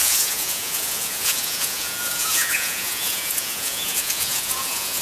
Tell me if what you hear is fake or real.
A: fake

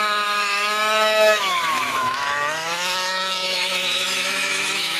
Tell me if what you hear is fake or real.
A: fake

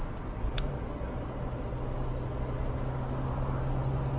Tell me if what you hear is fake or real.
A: real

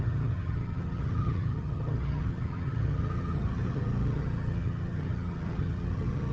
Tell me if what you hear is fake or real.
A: fake